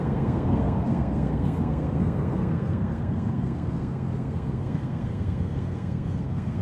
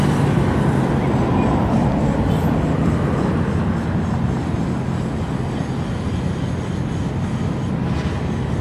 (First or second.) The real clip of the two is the second